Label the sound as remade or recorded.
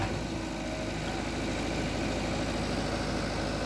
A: recorded